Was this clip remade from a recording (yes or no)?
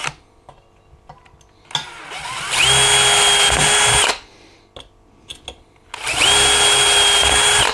no